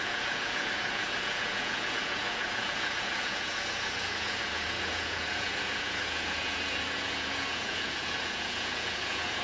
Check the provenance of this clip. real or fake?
fake